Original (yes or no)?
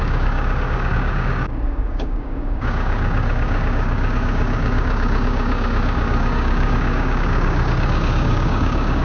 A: no